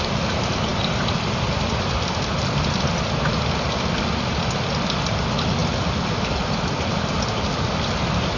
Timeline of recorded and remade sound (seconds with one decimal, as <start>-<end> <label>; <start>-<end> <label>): 0.0-8.4 recorded